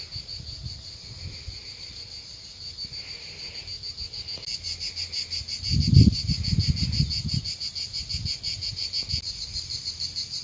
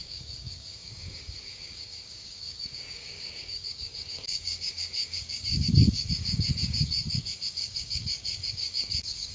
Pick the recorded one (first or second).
first